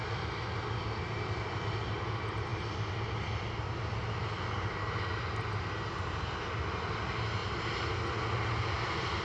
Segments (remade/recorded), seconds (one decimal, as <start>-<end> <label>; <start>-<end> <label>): 0.0-9.2 recorded